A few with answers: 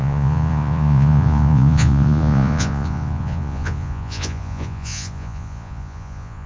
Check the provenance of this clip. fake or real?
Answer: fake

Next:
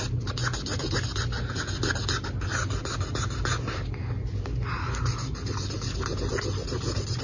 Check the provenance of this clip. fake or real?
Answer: real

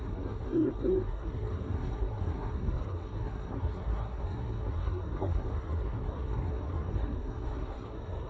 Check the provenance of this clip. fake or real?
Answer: fake